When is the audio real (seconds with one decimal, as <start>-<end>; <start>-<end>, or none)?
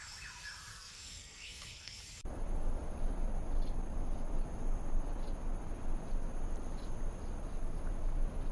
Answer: 0.0-0.7; 2.0-8.5